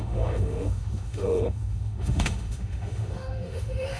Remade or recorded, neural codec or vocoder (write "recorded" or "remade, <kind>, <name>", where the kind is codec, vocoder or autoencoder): remade, autoencoder, DAC-VAE